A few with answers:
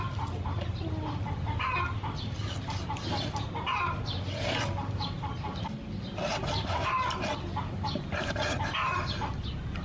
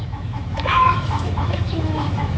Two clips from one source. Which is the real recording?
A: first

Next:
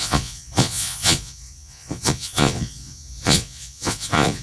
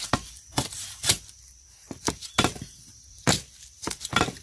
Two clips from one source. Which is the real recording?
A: second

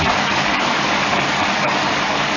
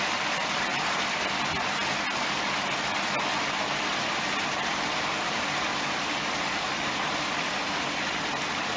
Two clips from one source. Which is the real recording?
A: second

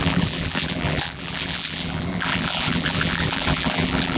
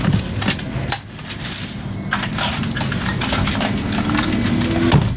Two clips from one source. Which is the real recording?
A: second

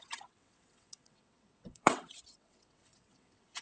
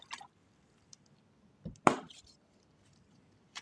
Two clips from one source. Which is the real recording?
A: second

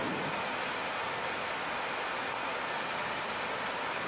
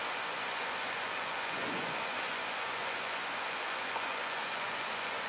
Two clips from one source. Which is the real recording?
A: first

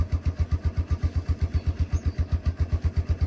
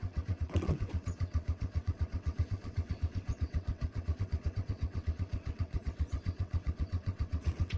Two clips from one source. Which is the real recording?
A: first